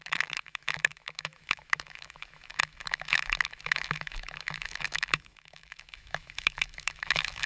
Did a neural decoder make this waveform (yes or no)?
yes